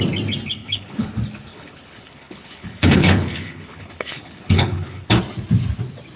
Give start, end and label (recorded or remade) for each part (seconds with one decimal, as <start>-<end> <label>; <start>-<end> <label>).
0.0-0.6 recorded; 0.6-1.1 remade; 1.1-1.5 recorded; 1.5-5.2 remade; 5.2-6.2 recorded